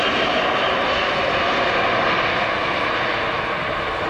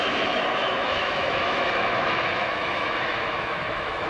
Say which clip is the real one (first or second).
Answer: first